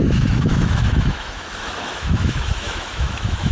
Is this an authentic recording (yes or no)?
no